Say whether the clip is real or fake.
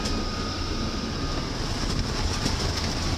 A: real